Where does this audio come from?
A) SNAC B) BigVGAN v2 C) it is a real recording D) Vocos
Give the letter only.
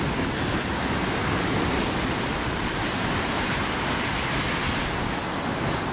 C